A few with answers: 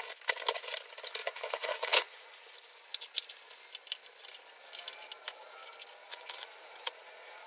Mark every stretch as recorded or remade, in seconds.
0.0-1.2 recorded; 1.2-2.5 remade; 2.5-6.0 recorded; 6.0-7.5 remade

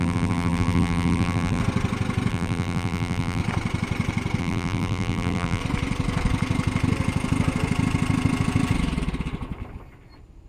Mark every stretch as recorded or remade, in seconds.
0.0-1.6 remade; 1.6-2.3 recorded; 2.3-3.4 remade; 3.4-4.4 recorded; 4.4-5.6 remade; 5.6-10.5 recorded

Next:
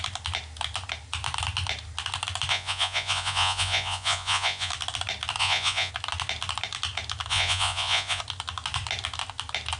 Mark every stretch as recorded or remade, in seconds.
0.0-2.5 recorded; 2.5-4.7 remade; 4.7-5.4 recorded; 5.4-5.9 remade; 5.9-7.3 recorded; 7.3-8.2 remade; 8.2-9.8 recorded

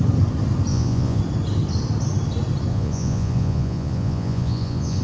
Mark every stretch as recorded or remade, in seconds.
0.0-0.7 recorded; 0.7-1.2 remade; 1.2-2.7 recorded; 2.7-5.0 remade

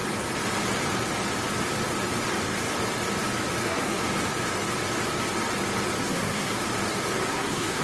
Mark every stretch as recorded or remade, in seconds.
0.0-3.6 recorded; 3.6-4.0 remade; 4.0-6.0 recorded; 6.0-6.6 remade; 6.6-7.3 recorded; 7.3-7.8 remade